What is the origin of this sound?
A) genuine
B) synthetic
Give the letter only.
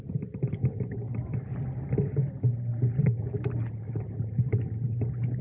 A